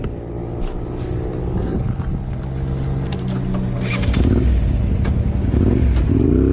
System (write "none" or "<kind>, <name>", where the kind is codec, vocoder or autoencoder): none